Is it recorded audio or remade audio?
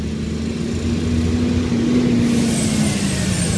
recorded